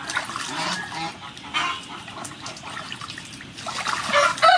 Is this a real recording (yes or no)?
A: yes